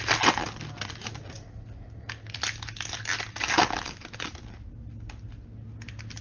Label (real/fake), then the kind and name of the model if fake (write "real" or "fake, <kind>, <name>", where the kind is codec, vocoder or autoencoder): real